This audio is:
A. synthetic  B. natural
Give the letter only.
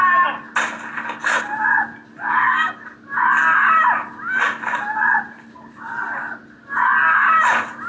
B